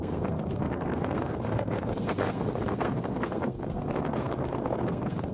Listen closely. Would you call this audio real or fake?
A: fake